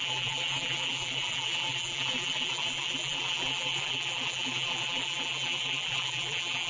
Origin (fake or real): fake